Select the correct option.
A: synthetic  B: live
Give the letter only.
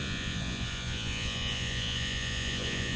A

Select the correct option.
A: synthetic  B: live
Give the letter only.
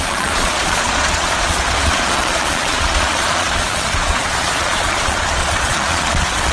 A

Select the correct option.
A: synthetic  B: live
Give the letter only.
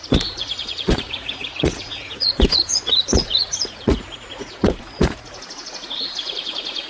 A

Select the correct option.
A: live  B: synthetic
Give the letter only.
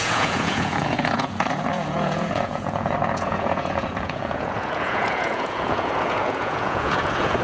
B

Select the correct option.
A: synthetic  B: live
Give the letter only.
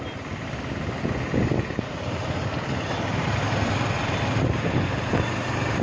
B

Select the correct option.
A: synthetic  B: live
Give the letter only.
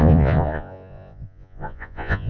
A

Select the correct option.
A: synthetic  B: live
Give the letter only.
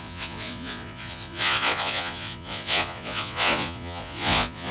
A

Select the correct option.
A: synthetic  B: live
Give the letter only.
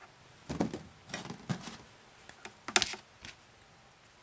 B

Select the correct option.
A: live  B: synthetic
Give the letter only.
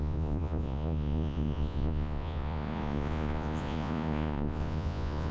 B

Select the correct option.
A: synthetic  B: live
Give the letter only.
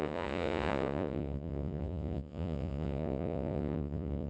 A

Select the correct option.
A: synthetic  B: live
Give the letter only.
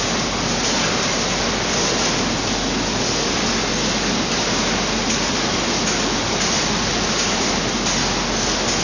B